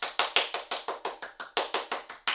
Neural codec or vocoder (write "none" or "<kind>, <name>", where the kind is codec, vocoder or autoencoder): none